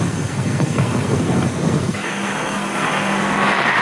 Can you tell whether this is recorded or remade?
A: remade